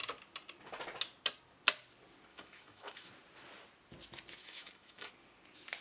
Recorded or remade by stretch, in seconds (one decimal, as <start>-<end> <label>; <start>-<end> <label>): 0.0-2.3 recorded; 2.3-3.1 remade; 3.1-4.4 recorded; 4.4-5.1 remade; 5.1-5.8 recorded